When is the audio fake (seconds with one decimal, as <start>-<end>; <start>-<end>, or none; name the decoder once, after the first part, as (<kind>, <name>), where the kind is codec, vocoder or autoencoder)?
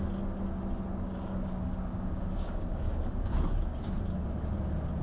0.9-3.9 (codec, DAC)